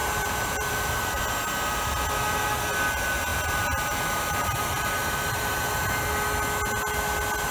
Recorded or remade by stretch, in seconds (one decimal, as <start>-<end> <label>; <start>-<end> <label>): 0.0-1.2 remade; 1.2-3.3 recorded; 3.3-5.6 remade; 5.6-7.5 recorded